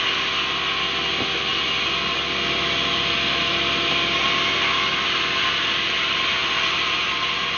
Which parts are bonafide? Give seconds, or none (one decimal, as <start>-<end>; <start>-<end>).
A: 0.0-7.6